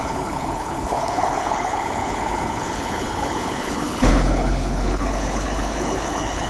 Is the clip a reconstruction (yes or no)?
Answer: yes